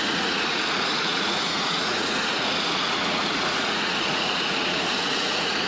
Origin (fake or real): fake